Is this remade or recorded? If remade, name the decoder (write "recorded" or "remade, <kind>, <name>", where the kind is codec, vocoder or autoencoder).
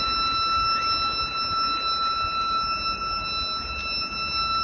recorded